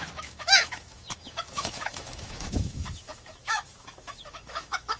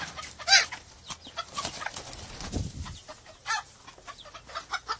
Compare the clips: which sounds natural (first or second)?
second